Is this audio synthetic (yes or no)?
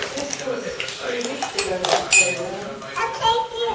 no